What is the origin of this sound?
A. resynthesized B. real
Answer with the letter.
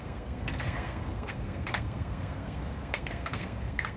A